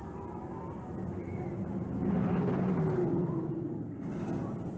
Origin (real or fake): real